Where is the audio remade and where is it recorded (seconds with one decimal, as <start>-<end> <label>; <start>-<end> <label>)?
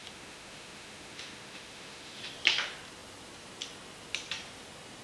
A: 0.0-2.2 remade; 2.2-5.0 recorded